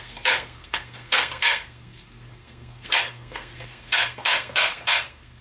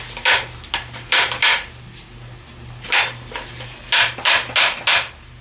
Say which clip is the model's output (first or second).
first